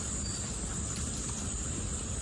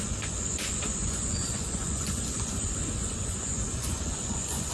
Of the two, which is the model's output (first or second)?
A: second